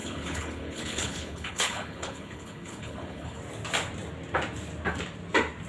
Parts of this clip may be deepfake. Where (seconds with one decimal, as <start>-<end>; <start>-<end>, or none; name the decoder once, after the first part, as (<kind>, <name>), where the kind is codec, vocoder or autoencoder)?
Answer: 0.0-3.4 (codec, HILCodec)

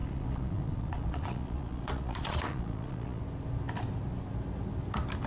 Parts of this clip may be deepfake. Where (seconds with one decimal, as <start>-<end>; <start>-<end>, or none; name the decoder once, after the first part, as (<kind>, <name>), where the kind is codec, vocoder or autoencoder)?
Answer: 0.0-3.2 (vocoder, Vocos)